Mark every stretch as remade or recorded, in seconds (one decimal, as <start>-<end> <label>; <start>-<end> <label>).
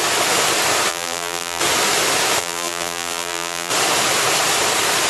0.0-0.9 recorded; 0.9-1.6 remade; 1.6-2.4 recorded; 2.4-3.7 remade; 3.7-5.1 recorded